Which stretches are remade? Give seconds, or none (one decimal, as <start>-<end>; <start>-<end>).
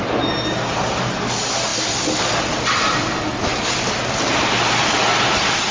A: 1.7-3.8